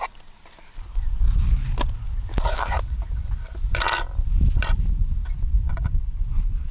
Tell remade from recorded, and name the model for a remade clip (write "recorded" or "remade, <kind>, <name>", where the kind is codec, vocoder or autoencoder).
recorded